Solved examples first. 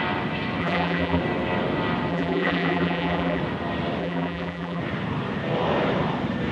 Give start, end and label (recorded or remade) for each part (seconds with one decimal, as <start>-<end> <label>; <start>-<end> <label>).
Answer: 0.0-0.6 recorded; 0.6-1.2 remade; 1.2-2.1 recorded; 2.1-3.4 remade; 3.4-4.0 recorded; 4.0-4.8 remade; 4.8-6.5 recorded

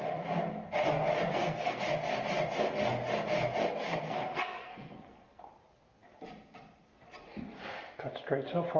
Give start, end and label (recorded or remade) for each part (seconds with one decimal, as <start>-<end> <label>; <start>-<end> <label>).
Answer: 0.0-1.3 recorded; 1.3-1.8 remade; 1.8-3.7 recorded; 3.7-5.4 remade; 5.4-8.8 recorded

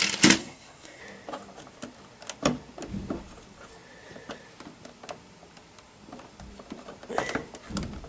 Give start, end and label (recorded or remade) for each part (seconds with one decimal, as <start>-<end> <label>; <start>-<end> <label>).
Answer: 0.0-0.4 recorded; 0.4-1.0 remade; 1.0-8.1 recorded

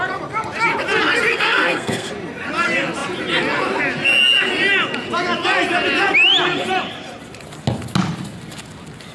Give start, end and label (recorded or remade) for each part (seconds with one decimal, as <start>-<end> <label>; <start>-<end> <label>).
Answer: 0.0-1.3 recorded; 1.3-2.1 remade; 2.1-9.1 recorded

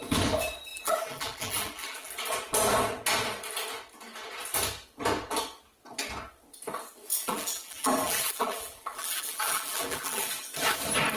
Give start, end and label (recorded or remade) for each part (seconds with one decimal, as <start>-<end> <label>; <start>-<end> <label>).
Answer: 0.0-0.7 recorded; 0.7-2.1 remade; 2.1-7.1 recorded; 7.1-10.3 remade; 10.3-11.2 recorded